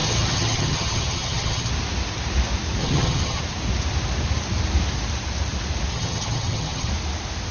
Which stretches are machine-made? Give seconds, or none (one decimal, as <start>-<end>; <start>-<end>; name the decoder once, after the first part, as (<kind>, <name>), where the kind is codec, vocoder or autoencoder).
0.0-1.7 (vocoder, HiFi-GAN); 2.8-3.4; 5.9-6.9